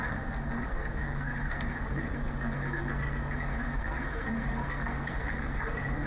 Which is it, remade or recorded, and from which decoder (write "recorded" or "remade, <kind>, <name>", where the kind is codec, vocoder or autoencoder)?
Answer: remade, codec, SNAC